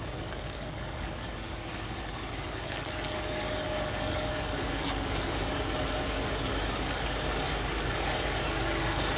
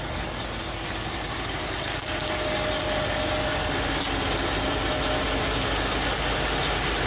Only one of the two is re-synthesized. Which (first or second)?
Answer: first